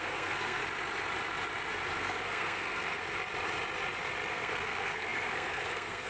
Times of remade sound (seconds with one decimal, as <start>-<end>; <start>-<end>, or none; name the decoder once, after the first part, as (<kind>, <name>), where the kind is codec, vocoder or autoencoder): 0.0-0.6 (codec, SNAC); 2.0-3.0; 4.3-6.1